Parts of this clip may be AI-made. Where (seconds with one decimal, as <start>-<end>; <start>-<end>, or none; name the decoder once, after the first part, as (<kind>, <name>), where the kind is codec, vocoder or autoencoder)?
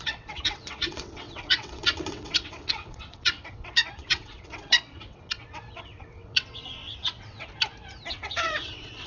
0.0-7.5 (vocoder, WaveNeXt); 8.1-9.1